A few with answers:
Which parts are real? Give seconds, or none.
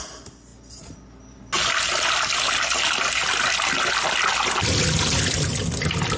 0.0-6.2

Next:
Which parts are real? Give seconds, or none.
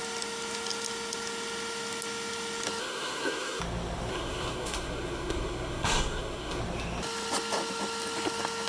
0.0-2.8; 3.6-4.1; 6.6-8.7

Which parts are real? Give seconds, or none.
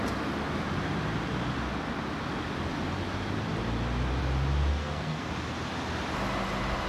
0.0-4.7; 5.3-6.9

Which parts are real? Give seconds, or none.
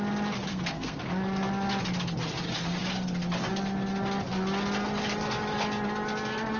0.0-0.5; 1.1-6.6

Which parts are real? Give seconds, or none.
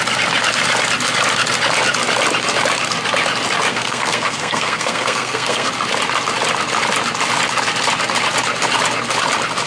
0.0-3.7; 5.7-9.7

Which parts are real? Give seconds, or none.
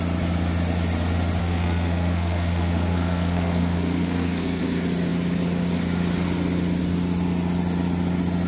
0.0-1.4; 4.6-8.5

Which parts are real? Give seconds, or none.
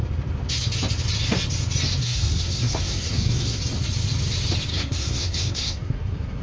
0.0-2.0; 3.6-4.7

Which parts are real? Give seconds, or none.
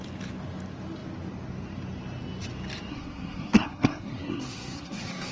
0.0-2.9